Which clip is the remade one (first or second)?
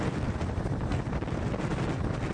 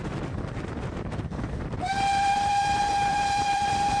second